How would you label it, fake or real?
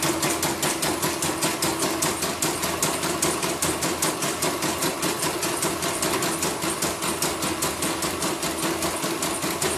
real